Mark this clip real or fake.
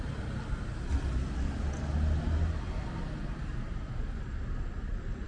real